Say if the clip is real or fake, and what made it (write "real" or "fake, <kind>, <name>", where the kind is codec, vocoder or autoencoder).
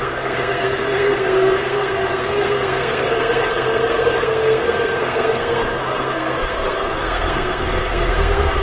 fake, codec, SNAC